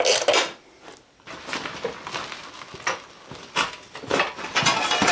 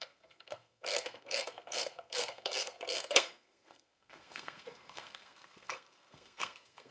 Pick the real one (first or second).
first